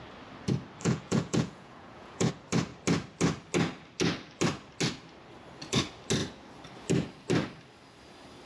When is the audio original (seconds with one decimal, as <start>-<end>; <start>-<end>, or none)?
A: 0.0-0.8; 2.3-8.5

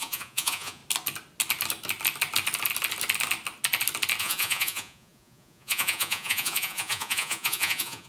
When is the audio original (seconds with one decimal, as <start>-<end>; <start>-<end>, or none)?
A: 0.8-4.2

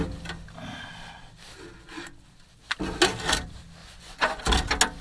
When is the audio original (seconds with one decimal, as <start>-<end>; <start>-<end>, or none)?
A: 0.0-3.8; 4.4-5.0

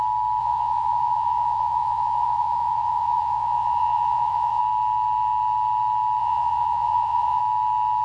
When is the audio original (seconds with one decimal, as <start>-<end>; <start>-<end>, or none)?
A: 0.0-0.4; 4.6-6.2; 7.4-8.0

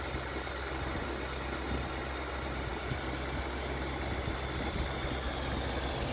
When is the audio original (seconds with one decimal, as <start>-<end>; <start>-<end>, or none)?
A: 0.0-6.1